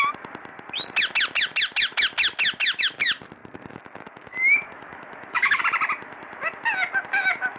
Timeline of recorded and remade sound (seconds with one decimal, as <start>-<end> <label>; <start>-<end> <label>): 0.0-3.4 recorded; 3.4-5.6 remade; 5.6-7.6 recorded